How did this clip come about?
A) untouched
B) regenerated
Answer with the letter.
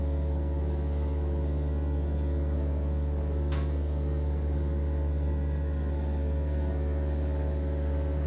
B